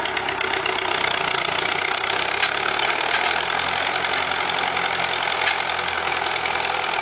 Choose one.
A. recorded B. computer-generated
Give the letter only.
A